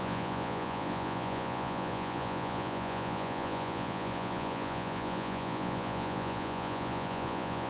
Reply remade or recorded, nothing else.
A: remade